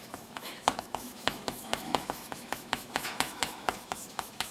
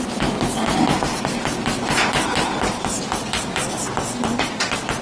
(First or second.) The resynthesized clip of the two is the first